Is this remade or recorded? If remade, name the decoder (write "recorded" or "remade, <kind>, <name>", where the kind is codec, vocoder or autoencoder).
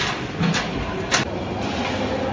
recorded